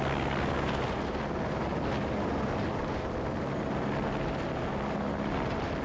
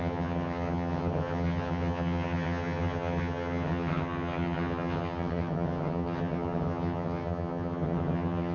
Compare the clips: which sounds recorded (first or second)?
first